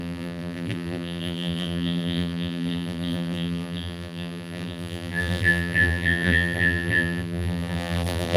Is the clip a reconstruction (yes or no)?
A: yes